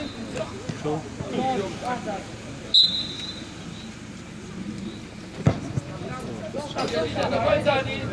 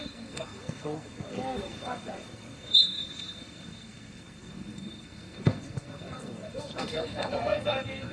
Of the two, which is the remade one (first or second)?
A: second